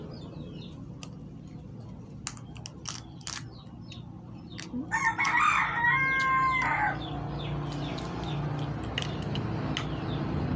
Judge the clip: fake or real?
real